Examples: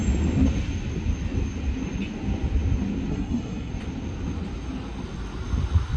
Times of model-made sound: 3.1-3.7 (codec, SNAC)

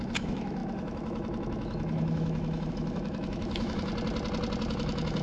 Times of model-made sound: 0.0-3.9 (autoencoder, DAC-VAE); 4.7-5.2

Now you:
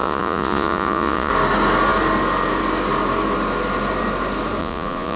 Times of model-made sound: 0.0-1.3 (vocoder, Vocos); 4.6-5.2

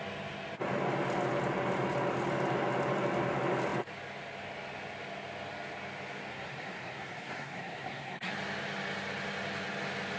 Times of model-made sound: 6.3-8.3 (codec, SNAC)

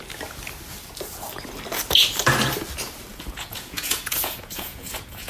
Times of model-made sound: 3.1-5.3 (vocoder, Vocos)